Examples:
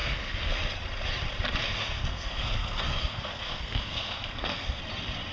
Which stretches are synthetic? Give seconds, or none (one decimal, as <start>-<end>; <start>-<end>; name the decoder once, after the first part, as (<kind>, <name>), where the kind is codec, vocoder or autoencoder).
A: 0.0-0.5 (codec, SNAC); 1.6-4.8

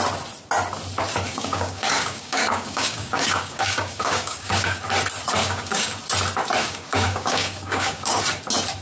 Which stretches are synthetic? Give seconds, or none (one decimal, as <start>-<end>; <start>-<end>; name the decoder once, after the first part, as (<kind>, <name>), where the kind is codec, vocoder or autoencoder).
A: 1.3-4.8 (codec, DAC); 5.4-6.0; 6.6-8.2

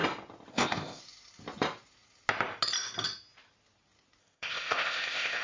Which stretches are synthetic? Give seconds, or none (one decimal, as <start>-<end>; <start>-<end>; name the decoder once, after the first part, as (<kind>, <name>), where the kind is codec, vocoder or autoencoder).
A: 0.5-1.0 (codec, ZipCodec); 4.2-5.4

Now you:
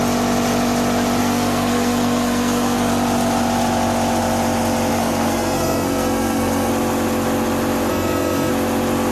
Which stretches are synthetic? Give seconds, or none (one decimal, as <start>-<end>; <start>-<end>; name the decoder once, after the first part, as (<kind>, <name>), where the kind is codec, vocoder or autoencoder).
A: 1.2-2.9 (codec, SNAC); 4.9-6.7; 7.9-8.5